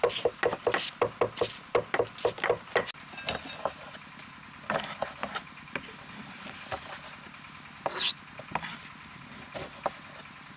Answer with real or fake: real